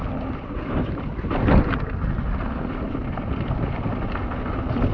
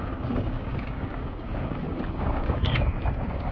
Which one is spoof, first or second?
second